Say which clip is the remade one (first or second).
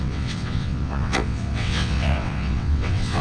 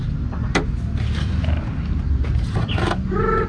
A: first